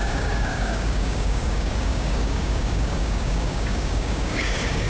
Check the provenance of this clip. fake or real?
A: fake